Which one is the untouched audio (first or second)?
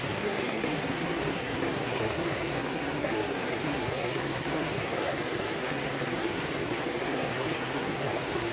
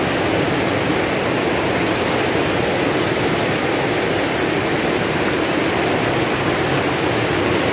second